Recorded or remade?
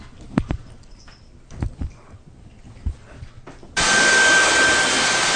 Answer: recorded